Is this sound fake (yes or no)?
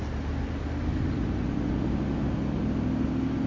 no